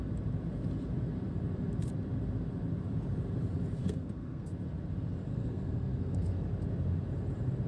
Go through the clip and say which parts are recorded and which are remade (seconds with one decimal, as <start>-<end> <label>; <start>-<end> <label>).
0.0-3.8 recorded; 3.8-4.5 remade; 4.5-5.3 recorded; 5.3-6.5 remade; 6.5-7.7 recorded